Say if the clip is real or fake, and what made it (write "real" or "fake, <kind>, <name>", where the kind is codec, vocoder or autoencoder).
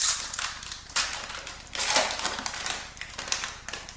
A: real